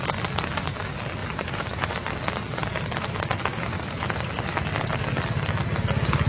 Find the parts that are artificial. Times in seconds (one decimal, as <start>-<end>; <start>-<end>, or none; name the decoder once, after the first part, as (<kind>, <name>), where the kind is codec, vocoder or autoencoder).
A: 1.2-2.2 (vocoder, BigVGAN v2); 3.5-4.3